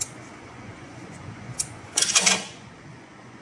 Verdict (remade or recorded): remade